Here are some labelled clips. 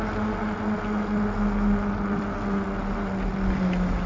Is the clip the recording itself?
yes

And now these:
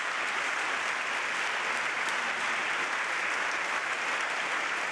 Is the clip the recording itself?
yes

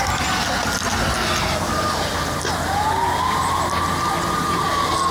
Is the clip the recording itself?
yes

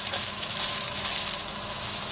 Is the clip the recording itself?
no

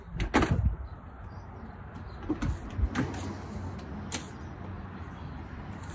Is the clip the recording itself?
yes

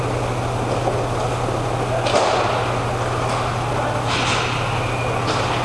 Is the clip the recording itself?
yes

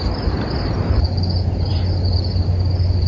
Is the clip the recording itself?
yes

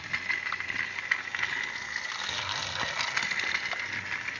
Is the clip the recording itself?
yes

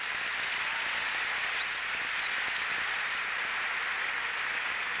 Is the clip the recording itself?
yes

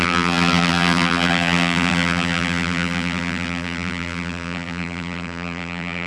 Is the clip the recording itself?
no